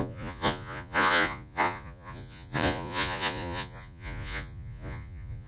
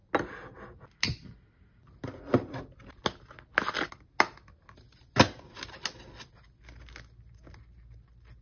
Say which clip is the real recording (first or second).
second